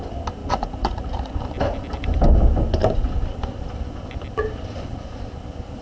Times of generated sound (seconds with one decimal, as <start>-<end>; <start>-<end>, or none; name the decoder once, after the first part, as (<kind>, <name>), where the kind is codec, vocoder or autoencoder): 0.4-1.3 (vocoder, Vocos)